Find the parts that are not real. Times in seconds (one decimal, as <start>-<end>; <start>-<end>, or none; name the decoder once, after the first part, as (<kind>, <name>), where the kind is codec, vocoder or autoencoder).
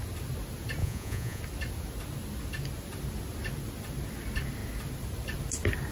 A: 0.8-1.4 (vocoder, Vocos)